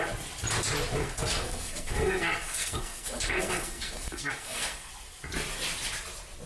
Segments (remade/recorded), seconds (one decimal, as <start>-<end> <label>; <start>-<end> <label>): 0.0-1.0 recorded; 1.0-4.9 remade; 4.9-6.5 recorded